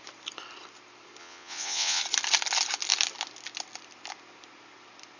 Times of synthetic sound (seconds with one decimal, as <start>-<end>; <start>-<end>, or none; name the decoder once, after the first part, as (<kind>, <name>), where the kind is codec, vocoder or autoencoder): 1.2-2.0 (vocoder, WaveNeXt)